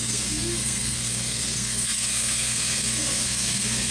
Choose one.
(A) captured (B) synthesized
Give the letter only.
B